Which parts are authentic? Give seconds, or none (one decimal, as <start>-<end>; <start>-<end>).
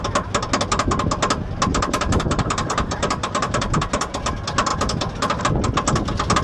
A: 0.0-1.7; 4.3-4.7; 5.4-6.4